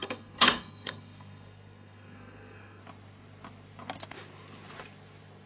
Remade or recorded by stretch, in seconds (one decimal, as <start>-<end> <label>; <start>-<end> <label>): 0.0-2.8 remade; 2.8-5.5 recorded

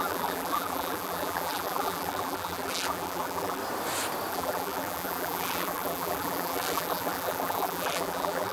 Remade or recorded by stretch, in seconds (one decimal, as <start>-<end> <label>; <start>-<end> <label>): 0.0-3.6 remade; 3.6-4.3 recorded; 4.3-8.5 remade

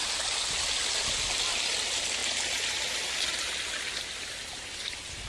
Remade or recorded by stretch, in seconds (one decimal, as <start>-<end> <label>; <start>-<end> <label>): 0.0-2.2 recorded; 2.2-2.8 remade; 2.8-5.3 recorded

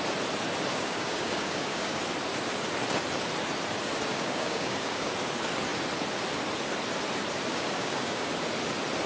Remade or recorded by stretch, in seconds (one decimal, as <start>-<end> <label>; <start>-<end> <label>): 0.0-0.7 recorded; 0.7-2.0 remade; 2.0-4.1 recorded; 4.1-5.1 remade; 5.1-7.5 recorded; 7.5-8.3 remade; 8.3-9.1 recorded

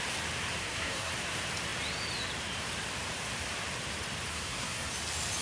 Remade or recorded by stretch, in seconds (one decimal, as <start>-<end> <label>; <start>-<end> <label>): 0.0-0.6 recorded; 0.6-1.1 remade; 1.1-4.3 recorded; 4.3-4.9 remade; 4.9-5.4 recorded

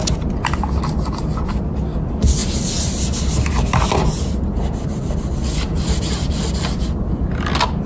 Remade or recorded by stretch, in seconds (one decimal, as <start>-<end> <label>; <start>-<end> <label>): 0.0-7.9 recorded

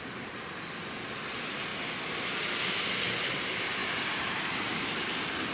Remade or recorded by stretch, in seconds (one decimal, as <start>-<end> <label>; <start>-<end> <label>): 0.0-5.5 recorded

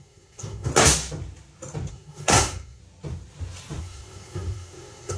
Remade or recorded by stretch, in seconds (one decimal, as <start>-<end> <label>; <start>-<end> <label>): 0.0-0.7 remade; 0.7-1.9 recorded; 1.9-2.8 remade; 2.8-3.8 recorded; 3.8-5.2 remade